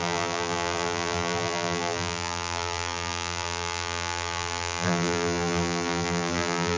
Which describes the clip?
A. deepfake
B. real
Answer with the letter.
A